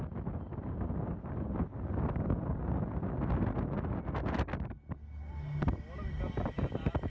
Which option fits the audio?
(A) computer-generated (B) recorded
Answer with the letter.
B